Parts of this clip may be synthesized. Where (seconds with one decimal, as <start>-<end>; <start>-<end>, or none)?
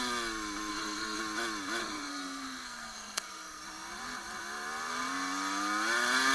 0.7-1.2; 1.8-3.6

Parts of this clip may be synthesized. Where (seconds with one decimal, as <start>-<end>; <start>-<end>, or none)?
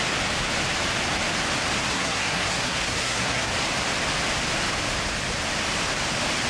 1.9-3.5